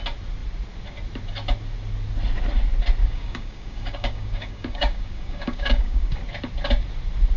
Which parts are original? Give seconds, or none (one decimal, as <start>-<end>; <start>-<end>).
0.0-3.0; 6.2-7.4